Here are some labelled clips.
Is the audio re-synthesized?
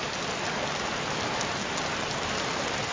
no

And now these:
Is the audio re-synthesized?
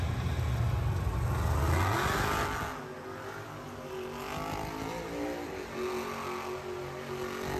no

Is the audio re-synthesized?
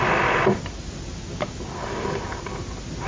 no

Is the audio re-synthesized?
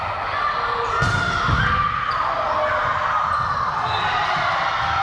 no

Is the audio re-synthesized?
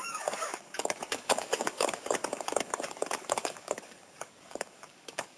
yes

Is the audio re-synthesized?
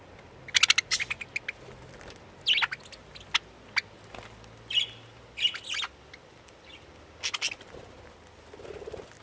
no